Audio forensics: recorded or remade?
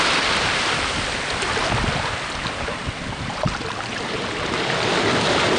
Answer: recorded